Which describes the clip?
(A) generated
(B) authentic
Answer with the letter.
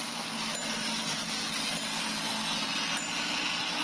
B